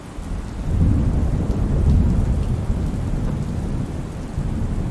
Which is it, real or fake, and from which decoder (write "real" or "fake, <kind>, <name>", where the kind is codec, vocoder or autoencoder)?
real